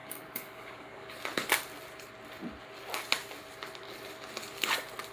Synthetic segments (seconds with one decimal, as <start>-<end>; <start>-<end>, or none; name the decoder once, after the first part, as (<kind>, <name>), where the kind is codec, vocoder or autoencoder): 0.0-1.1 (codec, DAC)